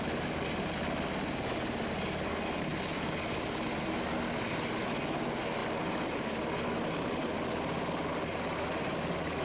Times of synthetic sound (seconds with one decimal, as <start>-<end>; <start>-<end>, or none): none